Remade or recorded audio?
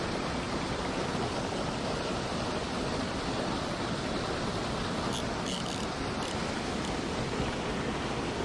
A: recorded